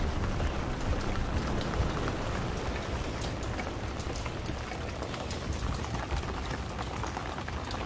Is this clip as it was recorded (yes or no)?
yes